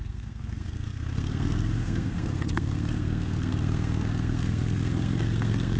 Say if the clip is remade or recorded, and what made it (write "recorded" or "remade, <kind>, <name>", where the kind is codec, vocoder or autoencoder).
remade, codec, SNAC